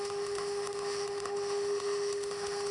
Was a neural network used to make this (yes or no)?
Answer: yes